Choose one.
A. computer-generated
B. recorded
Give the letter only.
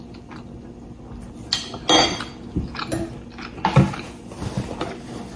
B